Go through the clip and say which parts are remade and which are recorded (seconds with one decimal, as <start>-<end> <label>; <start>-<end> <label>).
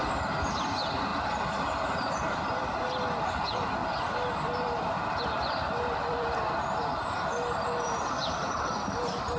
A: 0.0-9.4 remade